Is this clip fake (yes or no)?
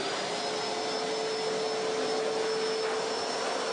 no